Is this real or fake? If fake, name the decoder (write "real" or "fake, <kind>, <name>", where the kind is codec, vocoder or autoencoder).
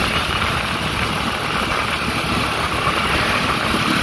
real